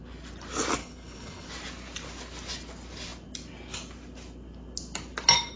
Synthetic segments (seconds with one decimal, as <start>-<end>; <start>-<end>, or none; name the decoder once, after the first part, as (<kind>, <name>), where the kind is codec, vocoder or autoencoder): 0.8-1.5 (codec, HILCodec)